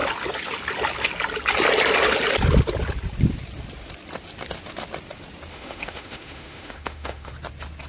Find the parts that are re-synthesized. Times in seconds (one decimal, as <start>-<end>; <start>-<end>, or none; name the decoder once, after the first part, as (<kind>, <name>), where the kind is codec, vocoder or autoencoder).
5.5-7.3 (autoencoder, DAC-VAE)